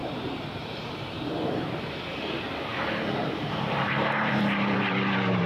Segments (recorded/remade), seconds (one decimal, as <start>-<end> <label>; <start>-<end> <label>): 0.0-5.5 remade

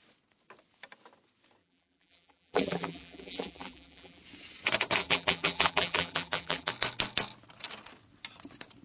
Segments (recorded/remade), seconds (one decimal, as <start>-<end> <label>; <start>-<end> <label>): 0.0-1.6 recorded; 1.6-4.2 remade; 4.2-5.0 recorded; 5.0-6.7 remade; 6.7-8.8 recorded

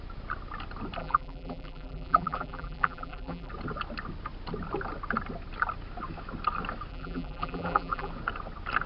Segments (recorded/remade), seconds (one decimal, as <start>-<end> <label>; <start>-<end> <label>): 0.0-1.0 recorded; 1.0-3.5 remade; 3.5-6.9 recorded; 6.9-8.1 remade; 8.1-8.9 recorded

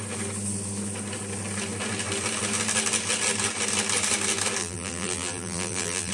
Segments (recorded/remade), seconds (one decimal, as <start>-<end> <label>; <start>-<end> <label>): 0.0-4.6 recorded; 4.6-6.1 remade

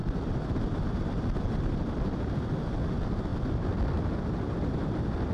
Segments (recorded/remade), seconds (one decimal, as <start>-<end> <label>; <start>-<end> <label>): 0.0-2.2 remade; 2.2-5.3 recorded

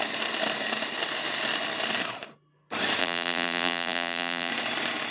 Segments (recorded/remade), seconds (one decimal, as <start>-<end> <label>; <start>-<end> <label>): 0.0-3.0 recorded; 3.0-4.5 remade; 4.5-5.1 recorded

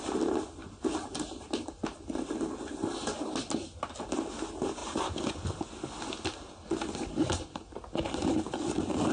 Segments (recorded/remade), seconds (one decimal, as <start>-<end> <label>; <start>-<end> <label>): 0.0-9.1 recorded